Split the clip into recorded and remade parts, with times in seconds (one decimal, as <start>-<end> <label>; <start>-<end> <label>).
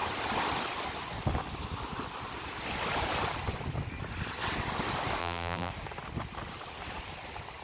0.0-5.2 recorded; 5.2-5.7 remade; 5.7-7.6 recorded